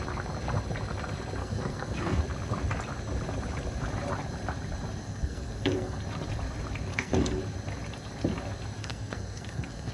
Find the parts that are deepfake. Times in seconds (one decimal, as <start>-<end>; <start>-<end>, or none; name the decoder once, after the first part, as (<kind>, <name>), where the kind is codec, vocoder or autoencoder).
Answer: 1.4-2.2 (codec, SNAC); 5.0-6.0; 6.9-7.4; 8.8-9.9